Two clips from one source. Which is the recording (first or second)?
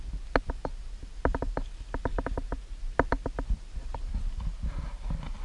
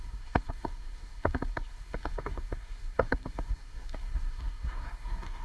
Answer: first